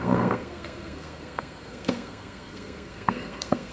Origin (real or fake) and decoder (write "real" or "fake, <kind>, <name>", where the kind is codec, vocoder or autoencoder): fake, codec, SNAC